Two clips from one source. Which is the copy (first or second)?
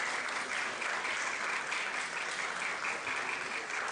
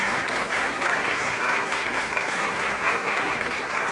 second